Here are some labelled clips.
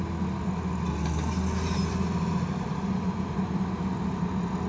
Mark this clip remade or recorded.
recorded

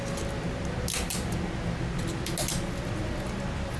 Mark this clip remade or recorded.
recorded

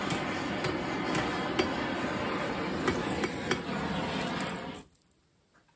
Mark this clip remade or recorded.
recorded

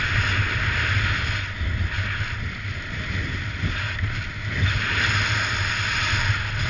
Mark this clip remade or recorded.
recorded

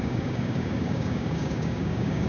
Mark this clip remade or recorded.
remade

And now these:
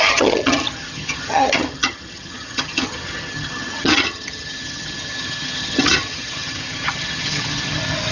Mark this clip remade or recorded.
remade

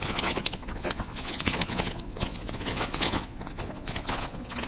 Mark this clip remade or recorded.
remade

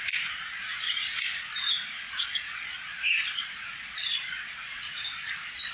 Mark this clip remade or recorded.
recorded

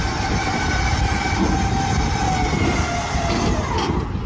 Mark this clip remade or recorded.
recorded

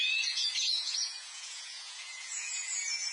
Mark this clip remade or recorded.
remade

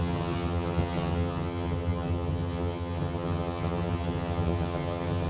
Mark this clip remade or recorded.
remade